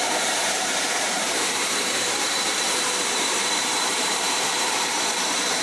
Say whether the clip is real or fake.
fake